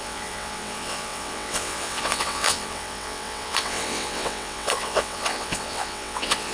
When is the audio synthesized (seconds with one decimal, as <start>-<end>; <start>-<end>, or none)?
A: 0.0-6.5